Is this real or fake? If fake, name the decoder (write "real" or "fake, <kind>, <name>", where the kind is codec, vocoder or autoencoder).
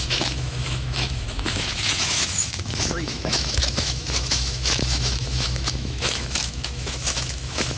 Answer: fake, autoencoder, DAC-VAE